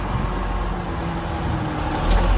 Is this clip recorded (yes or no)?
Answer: yes